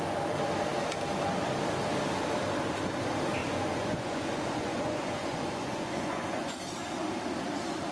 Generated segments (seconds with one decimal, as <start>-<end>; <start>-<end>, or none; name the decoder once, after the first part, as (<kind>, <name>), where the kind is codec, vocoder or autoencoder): 3.4-6.6 (vocoder, Vocos)